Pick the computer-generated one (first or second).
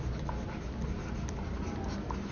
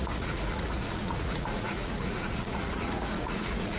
second